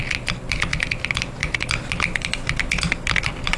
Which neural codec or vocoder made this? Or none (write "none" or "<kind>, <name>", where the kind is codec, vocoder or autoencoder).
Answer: none